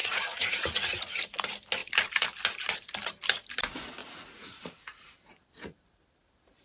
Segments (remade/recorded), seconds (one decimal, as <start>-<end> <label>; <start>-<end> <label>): 0.0-1.2 remade; 1.2-4.0 recorded; 4.0-5.1 remade; 5.1-6.6 recorded